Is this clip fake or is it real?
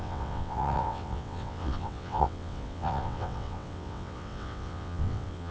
fake